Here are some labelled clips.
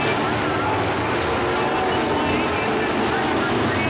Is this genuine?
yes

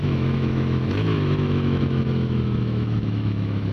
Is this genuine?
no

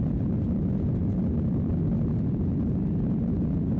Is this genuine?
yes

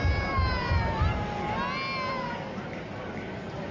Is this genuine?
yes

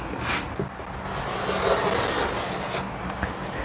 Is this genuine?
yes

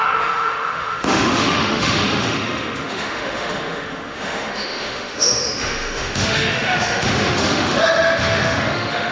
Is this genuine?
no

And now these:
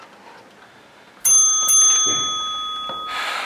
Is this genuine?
yes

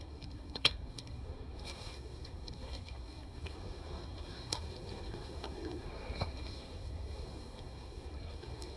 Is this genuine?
no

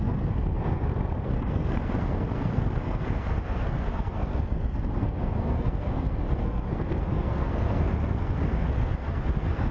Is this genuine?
no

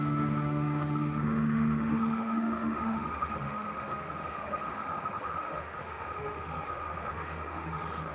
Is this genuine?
no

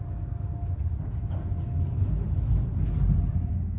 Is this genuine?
yes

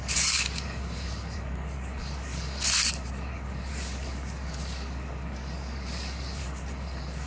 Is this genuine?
no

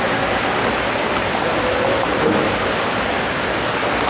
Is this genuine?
yes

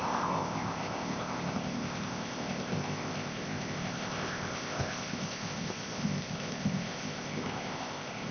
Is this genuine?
no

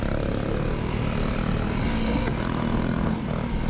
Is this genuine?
yes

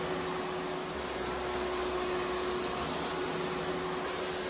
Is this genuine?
yes